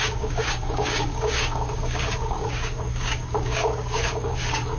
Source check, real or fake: fake